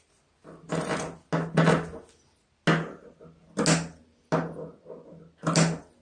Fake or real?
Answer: real